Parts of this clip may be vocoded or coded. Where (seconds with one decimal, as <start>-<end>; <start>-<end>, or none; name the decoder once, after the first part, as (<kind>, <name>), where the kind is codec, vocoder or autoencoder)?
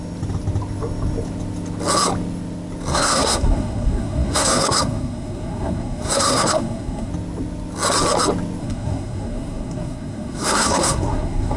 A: 2.9-7.1 (codec, SNAC); 8.6-11.6